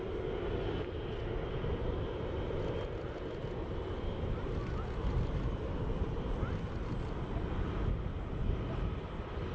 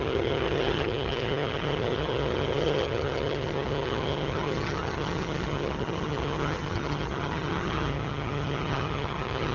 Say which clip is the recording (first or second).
first